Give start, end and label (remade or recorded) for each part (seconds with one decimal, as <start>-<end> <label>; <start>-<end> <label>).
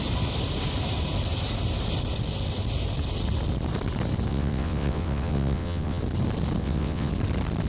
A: 0.0-4.3 recorded; 4.3-6.0 remade; 6.0-6.6 recorded; 6.6-7.1 remade; 7.1-7.7 recorded